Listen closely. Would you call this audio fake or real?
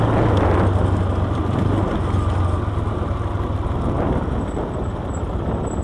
real